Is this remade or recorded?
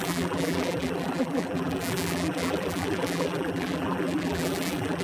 remade